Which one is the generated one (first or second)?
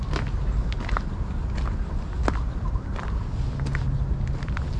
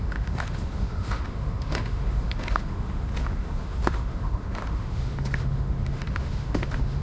second